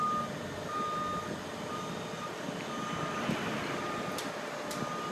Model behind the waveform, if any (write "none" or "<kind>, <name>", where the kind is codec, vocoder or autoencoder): none